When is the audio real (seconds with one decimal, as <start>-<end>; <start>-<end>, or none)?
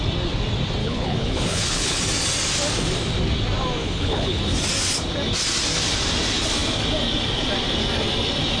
0.0-0.8; 2.0-3.8; 4.4-8.6